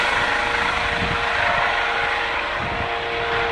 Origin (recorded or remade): recorded